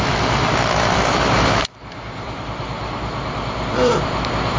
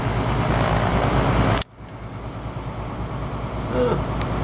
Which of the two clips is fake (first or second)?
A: first